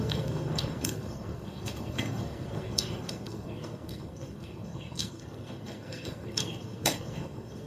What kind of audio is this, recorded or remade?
remade